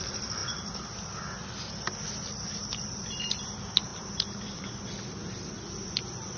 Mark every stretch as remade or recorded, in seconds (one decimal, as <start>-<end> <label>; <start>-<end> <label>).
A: 0.0-6.4 recorded